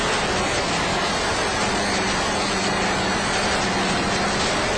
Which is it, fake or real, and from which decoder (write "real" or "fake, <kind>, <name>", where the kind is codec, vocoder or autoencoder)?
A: real